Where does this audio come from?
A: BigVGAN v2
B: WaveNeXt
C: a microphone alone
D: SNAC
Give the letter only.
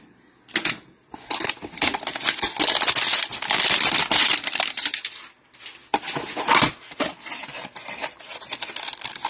C